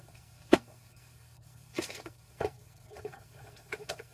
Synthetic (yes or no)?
yes